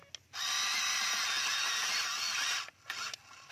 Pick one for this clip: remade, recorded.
recorded